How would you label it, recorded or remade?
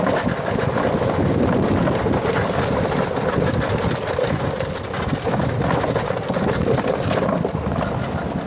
remade